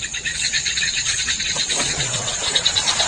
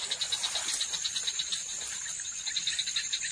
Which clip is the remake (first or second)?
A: first